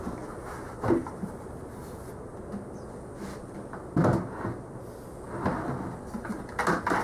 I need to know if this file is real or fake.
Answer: real